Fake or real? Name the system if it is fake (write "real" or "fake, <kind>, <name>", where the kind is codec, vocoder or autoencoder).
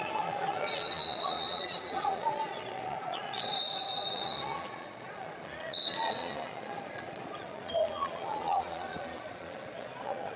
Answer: fake, vocoder, Vocos